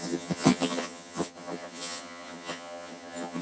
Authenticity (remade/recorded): remade